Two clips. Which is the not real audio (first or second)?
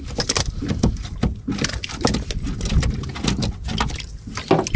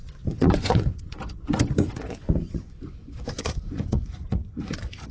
second